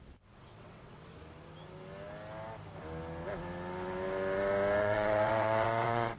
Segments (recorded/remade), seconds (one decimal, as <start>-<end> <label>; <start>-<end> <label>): 0.0-1.1 remade; 1.1-4.8 recorded; 4.8-6.2 remade